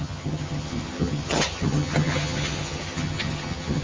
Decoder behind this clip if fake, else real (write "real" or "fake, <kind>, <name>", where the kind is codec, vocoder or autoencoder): fake, vocoder, HiFi-GAN